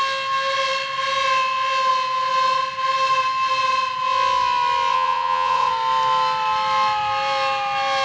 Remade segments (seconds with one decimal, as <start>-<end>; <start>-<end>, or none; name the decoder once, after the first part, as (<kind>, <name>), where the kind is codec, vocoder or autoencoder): 4.9-5.7 (vocoder, WaveNeXt)